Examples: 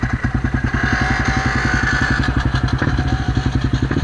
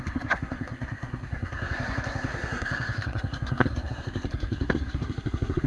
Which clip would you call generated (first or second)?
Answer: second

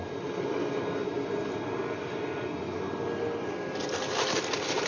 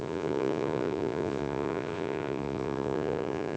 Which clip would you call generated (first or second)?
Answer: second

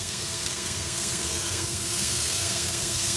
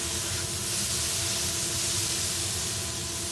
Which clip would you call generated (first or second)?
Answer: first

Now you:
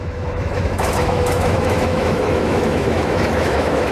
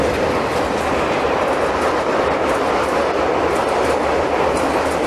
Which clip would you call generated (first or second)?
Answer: first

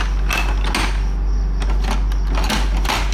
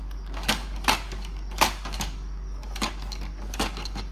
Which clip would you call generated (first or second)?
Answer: second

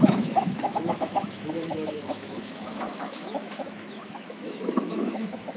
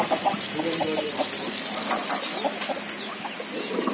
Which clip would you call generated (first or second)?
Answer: first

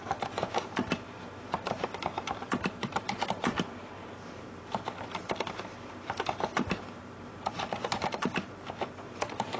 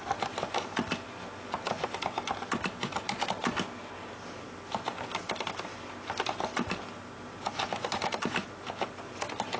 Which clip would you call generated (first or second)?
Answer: first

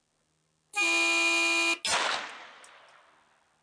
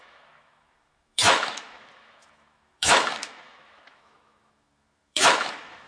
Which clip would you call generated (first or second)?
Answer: second